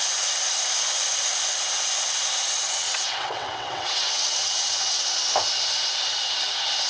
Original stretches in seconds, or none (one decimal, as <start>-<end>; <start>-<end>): 0.0-2.8; 5.1-6.9